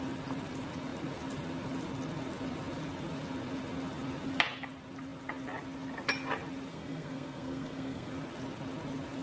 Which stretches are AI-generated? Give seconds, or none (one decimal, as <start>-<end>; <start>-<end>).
6.7-8.1